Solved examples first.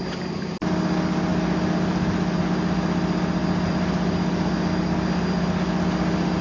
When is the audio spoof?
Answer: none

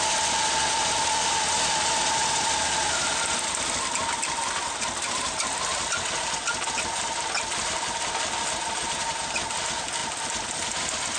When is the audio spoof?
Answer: none

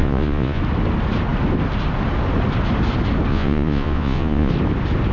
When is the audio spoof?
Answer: 0.0-0.6 (vocoder, Vocos); 3.3-4.5

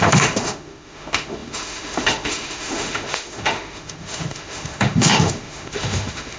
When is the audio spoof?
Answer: 0.0-6.4 (autoencoder, DAC-VAE)

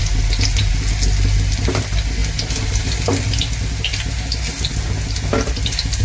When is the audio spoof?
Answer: none

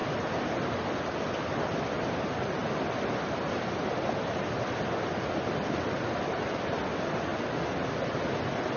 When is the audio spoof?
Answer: none